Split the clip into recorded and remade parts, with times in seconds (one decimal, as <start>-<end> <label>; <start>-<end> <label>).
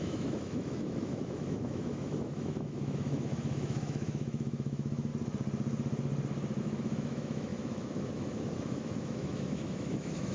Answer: 0.0-5.1 remade; 5.1-6.6 recorded; 6.6-10.3 remade